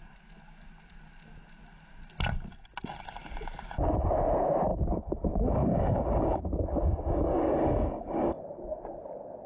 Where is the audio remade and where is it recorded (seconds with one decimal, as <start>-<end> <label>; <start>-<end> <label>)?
0.0-4.7 recorded; 4.7-8.8 remade; 8.8-9.5 recorded